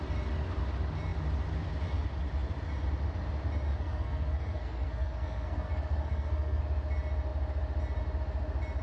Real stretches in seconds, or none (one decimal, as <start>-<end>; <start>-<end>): 0.0-3.7; 6.6-8.8